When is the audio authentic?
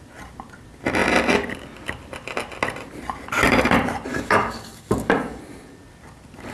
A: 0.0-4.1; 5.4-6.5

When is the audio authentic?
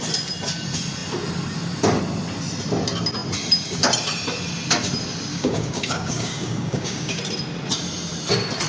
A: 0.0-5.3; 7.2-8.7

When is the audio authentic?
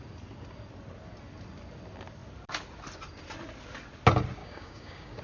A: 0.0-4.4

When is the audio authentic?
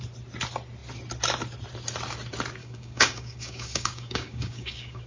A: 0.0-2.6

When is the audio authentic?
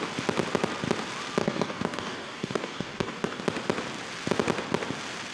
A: 0.0-1.4; 3.4-5.3